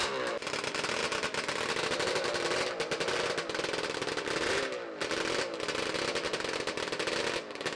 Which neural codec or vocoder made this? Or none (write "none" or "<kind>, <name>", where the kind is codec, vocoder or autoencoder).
none